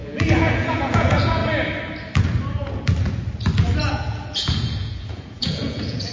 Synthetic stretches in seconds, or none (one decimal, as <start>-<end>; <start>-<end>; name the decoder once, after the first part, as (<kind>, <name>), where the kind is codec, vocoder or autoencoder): 0.0-1.4 (vocoder, Vocos); 3.9-6.1

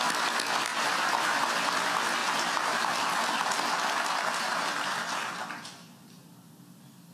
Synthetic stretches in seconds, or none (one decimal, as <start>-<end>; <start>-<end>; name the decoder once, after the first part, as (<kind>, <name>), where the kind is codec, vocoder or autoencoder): 0.7-1.5 (vocoder, BigVGAN v2); 2.2-6.5

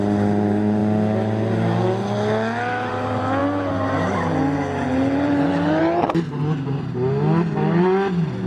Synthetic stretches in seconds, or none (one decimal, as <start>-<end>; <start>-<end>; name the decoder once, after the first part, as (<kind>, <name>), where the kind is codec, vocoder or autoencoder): none

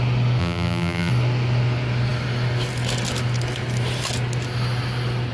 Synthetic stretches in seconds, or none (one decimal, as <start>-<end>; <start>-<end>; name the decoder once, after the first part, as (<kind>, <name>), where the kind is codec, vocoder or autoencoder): 0.4-1.1 (vocoder, BigVGAN v2)

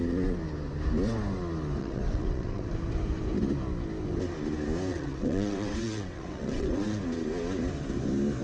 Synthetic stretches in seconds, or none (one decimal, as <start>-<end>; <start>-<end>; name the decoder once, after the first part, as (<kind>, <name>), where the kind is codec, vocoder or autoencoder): 1.8-2.7 (vocoder, WaveNeXt); 4.9-7.0

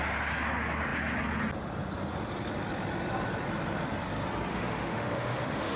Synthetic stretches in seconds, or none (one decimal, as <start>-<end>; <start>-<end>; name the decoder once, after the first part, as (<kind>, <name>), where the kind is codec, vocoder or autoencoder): 4.5-5.8 (autoencoder, DAC-VAE)

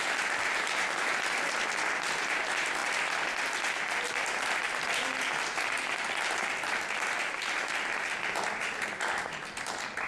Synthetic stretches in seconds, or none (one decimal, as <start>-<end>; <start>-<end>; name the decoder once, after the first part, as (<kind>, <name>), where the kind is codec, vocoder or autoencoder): none

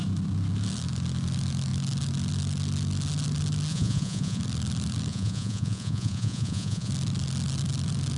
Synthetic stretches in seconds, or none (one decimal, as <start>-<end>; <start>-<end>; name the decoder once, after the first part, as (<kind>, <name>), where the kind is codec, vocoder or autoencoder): 3.7-4.4 (vocoder, Vocos); 5.1-6.9